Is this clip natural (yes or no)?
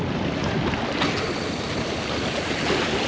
yes